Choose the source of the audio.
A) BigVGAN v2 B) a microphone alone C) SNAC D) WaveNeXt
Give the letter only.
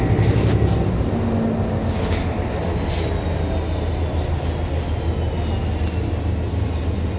B